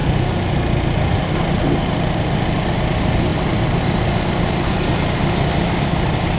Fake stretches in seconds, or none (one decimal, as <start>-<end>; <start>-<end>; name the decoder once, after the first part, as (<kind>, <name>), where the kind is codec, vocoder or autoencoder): 3.3-4.7 (vocoder, BigVGAN v2)